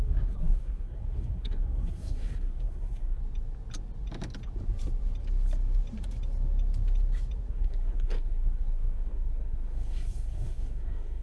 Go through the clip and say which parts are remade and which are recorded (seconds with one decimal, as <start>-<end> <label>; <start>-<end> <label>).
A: 0.0-3.2 remade; 3.2-7.5 recorded; 7.5-11.2 remade